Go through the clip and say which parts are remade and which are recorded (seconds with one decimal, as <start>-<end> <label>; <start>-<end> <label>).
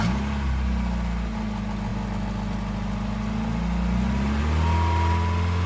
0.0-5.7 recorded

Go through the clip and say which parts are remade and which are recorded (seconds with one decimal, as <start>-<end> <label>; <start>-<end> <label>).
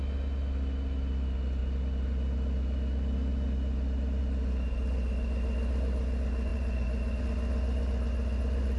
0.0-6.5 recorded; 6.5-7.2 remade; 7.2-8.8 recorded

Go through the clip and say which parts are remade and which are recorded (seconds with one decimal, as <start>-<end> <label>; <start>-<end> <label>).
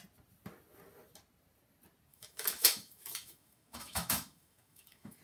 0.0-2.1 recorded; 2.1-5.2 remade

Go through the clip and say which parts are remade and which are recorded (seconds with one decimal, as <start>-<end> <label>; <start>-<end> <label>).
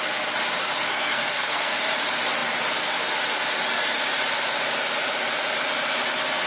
0.0-0.8 recorded; 0.8-1.8 remade; 1.8-6.5 recorded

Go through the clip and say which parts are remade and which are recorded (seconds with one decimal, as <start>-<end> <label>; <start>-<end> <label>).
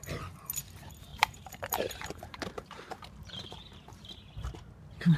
0.0-1.1 recorded; 1.1-4.2 remade; 4.2-5.2 recorded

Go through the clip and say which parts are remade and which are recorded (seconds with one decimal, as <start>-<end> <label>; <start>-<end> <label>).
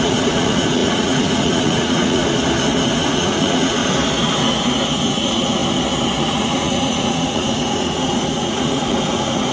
0.0-2.2 remade; 2.2-3.0 recorded; 3.0-3.8 remade; 3.8-5.0 recorded; 5.0-5.6 remade; 5.6-6.2 recorded; 6.2-9.5 remade